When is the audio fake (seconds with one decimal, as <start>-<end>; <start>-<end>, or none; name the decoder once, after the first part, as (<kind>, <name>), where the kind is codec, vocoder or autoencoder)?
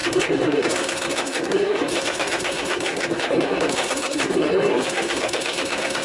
0.0-6.0 (codec, SNAC)